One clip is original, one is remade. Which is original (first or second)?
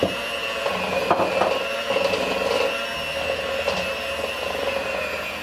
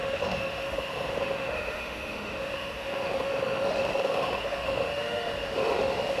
first